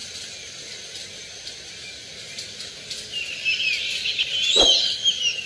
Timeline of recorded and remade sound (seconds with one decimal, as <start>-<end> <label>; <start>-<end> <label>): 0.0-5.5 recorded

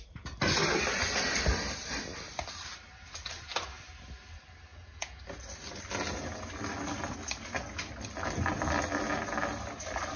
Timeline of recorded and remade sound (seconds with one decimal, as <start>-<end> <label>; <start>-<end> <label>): 0.0-4.7 recorded; 4.7-5.2 remade; 5.2-10.2 recorded

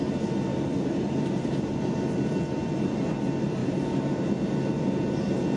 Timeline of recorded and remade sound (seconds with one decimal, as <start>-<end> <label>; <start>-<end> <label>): 0.0-0.5 recorded; 0.5-2.2 remade; 2.2-3.6 recorded; 3.6-4.2 remade; 4.2-5.6 recorded